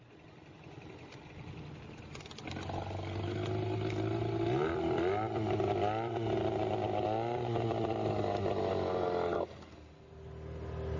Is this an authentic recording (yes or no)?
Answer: yes